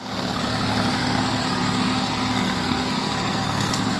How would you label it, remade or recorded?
remade